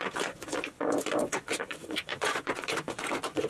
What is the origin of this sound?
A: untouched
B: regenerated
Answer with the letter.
B